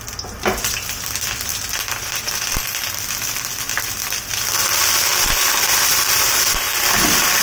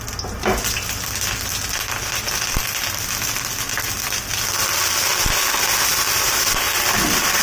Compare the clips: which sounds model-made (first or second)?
first